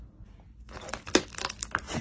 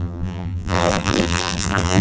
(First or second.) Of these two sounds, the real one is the first